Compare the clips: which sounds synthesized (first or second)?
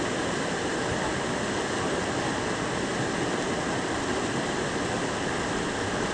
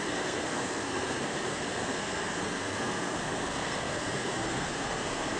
second